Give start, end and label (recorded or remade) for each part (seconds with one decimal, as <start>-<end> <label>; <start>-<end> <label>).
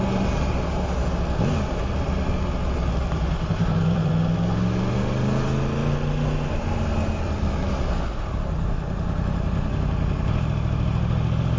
0.0-3.0 recorded; 3.0-4.1 remade; 4.1-11.6 recorded